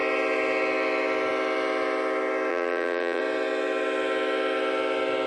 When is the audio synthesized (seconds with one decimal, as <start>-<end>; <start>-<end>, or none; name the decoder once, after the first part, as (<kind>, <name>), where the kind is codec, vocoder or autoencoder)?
2.5-3.2 (vocoder, BigVGAN v2)